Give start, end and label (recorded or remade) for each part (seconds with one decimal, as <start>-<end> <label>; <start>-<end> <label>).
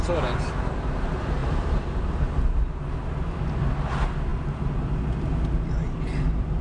0.0-1.4 recorded; 1.4-2.0 remade; 2.0-6.6 recorded